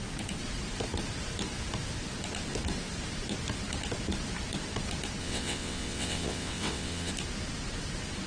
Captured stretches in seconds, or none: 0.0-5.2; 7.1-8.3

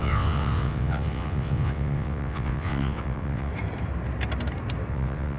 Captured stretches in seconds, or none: 3.5-4.9

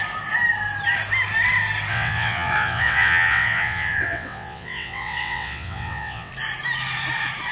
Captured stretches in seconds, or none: 0.0-1.9; 6.3-7.5

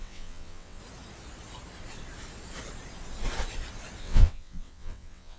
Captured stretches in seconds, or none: 0.8-4.0

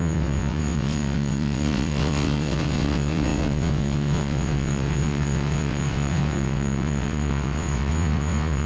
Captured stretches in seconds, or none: none